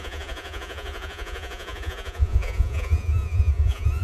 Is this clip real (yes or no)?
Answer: no